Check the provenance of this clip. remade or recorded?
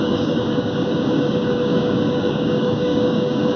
remade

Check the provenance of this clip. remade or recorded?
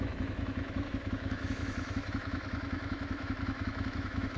remade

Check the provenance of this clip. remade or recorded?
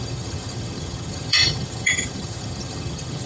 remade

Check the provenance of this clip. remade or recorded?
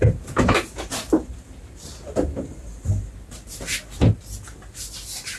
recorded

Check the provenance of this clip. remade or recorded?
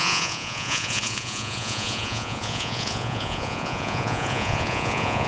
remade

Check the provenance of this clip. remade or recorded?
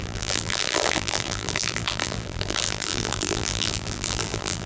remade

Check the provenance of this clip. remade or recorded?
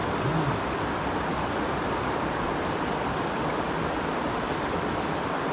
recorded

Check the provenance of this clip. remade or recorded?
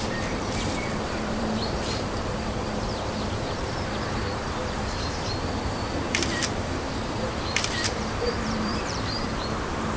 remade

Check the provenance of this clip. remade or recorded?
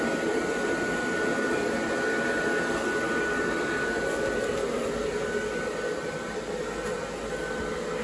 recorded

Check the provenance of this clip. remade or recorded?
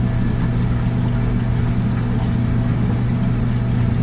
recorded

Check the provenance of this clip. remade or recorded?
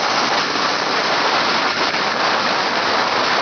recorded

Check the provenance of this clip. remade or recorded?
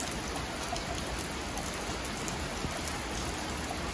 recorded